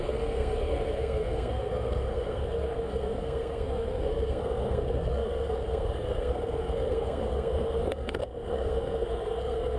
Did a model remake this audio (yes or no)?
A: yes